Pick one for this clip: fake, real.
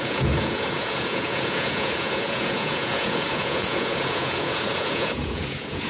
fake